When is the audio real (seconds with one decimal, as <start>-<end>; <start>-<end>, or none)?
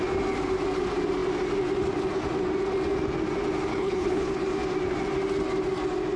0.0-3.7; 4.4-6.2